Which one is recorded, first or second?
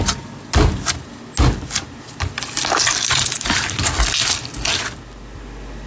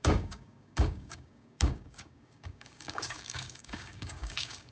first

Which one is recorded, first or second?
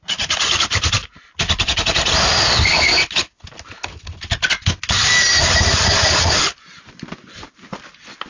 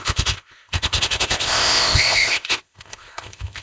first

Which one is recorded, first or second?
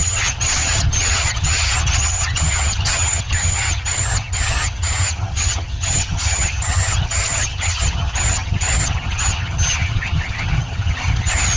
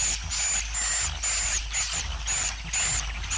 second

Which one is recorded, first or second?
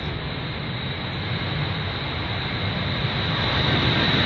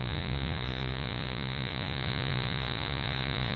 first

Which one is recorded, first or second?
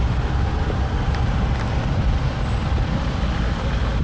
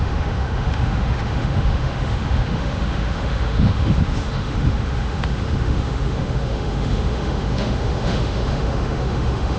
first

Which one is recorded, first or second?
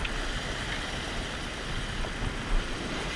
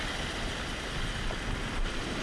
first